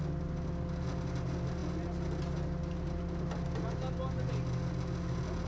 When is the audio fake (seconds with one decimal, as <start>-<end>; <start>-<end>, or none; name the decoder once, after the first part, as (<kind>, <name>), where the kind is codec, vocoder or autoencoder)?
none

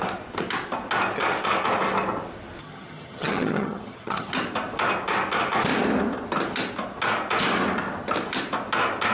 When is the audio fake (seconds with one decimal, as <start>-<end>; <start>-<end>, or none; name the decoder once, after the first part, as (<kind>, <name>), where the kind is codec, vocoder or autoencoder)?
2.6-4.3 (vocoder, HiFi-GAN)